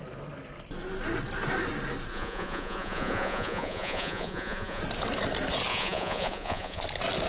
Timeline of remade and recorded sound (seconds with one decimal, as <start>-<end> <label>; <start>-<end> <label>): 0.0-2.1 recorded; 2.1-4.8 remade; 4.8-5.7 recorded; 5.7-6.8 remade; 6.8-7.3 recorded